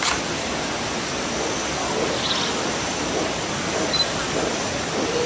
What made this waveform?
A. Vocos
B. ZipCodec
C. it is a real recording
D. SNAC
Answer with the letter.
C